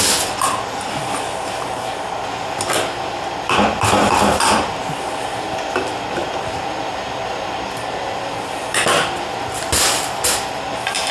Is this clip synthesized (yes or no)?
yes